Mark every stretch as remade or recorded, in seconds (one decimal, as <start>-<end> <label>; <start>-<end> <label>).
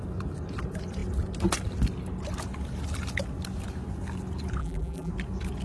0.0-4.6 recorded; 4.6-5.1 remade; 5.1-5.6 recorded